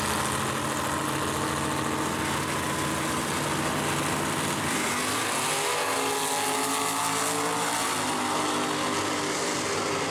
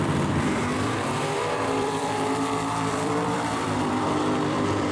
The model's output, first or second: second